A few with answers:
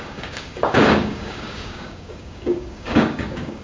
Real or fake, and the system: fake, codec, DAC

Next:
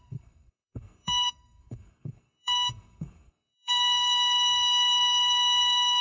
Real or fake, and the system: fake, codec, SNAC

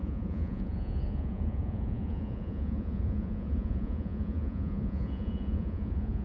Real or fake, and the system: fake, vocoder, Vocos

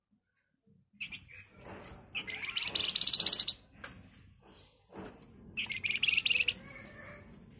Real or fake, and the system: real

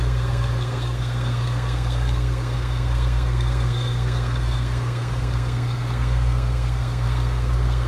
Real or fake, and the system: fake, codec, SNAC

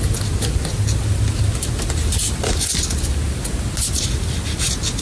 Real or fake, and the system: real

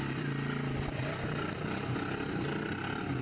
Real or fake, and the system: real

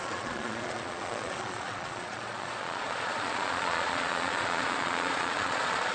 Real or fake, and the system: fake, vocoder, Vocos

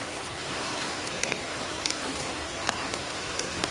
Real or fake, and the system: fake, codec, SNAC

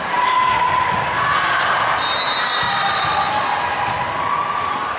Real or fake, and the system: real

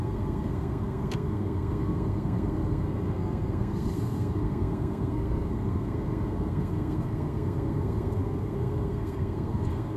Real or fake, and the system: fake, codec, SNAC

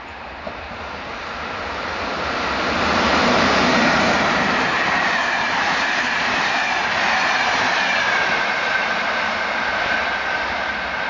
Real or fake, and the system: fake, vocoder, BigVGAN v2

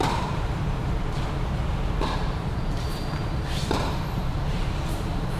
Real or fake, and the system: fake, vocoder, BigVGAN v2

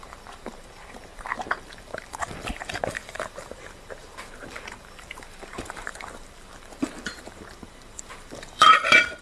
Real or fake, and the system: fake, vocoder, BigVGAN v2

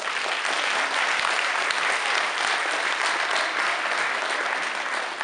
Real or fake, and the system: real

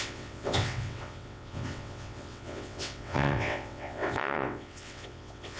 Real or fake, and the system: fake, vocoder, WaveNeXt